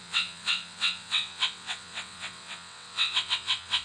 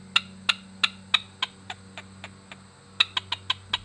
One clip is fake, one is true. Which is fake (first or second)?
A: first